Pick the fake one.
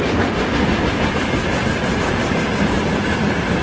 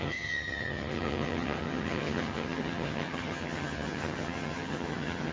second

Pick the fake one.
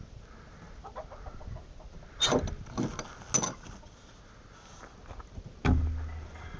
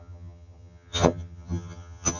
second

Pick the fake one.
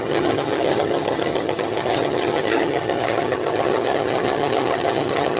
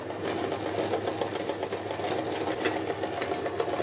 first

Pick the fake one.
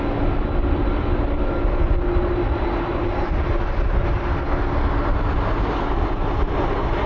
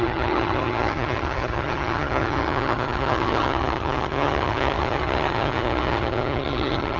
second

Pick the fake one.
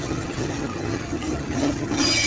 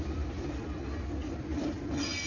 first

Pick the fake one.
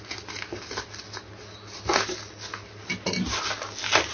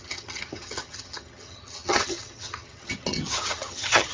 second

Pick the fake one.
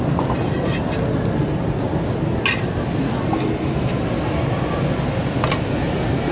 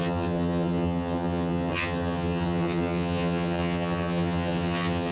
second